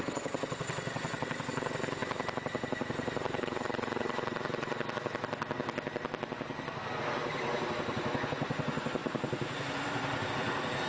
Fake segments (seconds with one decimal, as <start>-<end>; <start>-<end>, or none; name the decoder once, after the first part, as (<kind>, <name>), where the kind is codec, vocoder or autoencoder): 2.0-4.9 (vocoder, BigVGAN v2); 9.0-10.3